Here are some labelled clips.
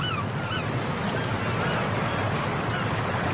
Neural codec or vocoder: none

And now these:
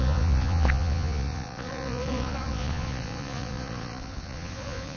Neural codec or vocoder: vocoder, Vocos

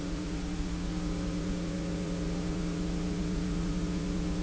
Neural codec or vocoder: vocoder, Vocos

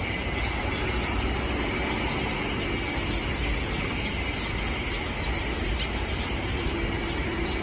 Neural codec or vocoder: none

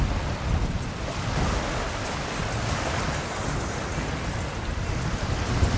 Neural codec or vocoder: none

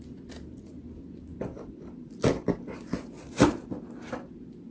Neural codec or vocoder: none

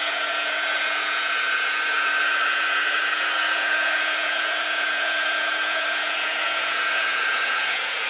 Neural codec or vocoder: vocoder, Vocos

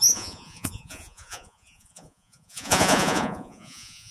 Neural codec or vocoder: vocoder, Vocos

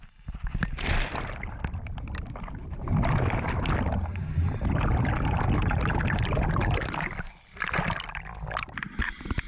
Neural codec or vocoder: none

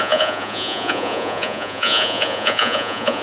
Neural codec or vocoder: vocoder, Vocos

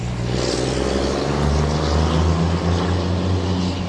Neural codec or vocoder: none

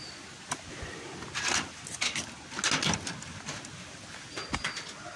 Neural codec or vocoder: none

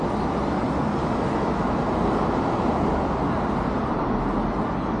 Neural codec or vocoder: none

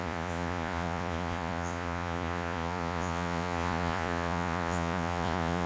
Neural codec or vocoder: vocoder, Vocos